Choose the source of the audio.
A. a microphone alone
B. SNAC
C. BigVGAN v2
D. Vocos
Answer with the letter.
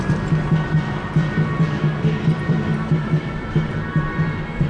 C